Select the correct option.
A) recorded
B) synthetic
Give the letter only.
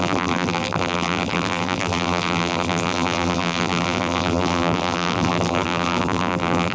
B